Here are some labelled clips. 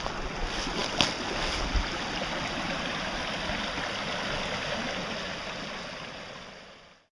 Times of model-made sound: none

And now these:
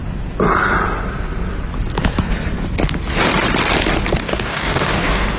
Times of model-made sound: 4.2-5.4 (codec, DAC)

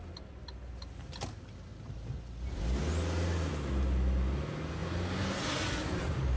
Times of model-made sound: none

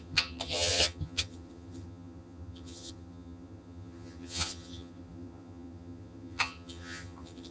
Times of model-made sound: 0.0-7.5 (vocoder, HiFi-GAN)

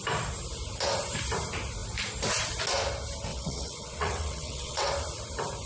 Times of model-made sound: 3.3-4.9 (vocoder, WaveNeXt)

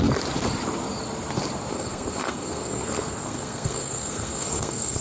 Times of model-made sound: 1.7-5.0 (codec, SNAC)

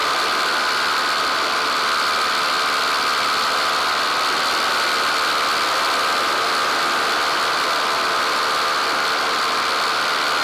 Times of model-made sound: none

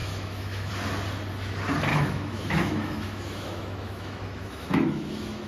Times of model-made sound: 0.0-0.7 (autoencoder, DAC-VAE); 1.9-5.5